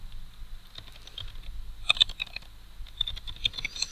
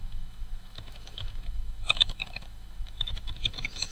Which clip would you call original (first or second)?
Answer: first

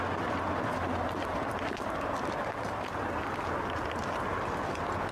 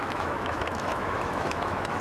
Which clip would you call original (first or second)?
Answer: first